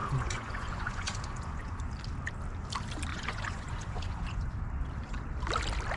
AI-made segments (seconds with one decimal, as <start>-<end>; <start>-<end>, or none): 0.0-1.8; 3.1-4.5